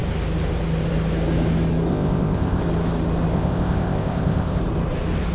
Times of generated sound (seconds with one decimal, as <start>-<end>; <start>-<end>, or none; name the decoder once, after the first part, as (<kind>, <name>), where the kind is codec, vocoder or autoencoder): 1.9-2.6 (codec, ZipCodec); 3.3-4.6